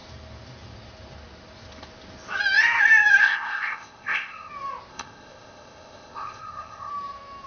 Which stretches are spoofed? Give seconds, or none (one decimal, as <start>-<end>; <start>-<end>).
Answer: 3.2-4.5; 4.9-6.9